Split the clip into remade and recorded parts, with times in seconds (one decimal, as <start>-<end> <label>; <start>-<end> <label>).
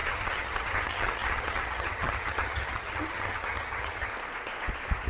0.0-4.1 remade; 4.1-5.1 recorded